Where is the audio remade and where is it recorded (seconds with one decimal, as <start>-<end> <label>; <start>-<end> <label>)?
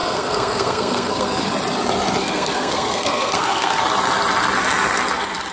0.0-1.5 remade; 1.5-2.2 recorded; 2.2-3.8 remade; 3.8-5.5 recorded